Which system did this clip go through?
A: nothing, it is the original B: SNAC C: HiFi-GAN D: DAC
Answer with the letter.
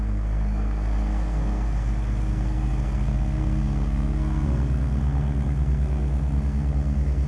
B